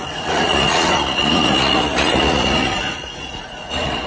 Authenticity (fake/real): fake